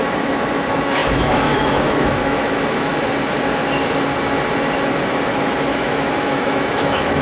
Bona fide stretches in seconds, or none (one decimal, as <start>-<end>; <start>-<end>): 2.9-5.3